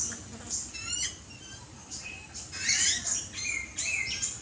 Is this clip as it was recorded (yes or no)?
yes